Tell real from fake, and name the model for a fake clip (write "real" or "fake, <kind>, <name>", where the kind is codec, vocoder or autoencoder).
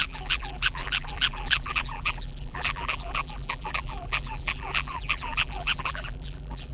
fake, vocoder, BigVGAN v2